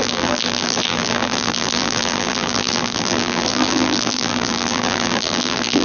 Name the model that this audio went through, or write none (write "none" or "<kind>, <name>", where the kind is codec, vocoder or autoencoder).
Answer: vocoder, BigVGAN v2